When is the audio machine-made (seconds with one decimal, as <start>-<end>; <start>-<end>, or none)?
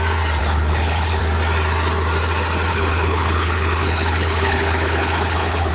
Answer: 0.4-1.2; 2.7-5.7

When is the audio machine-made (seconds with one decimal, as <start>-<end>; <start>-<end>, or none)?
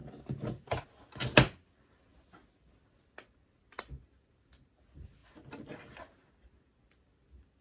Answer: none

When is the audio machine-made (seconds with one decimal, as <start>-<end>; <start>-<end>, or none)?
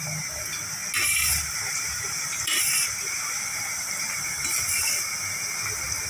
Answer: 1.1-4.8